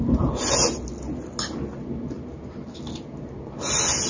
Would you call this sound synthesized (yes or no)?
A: no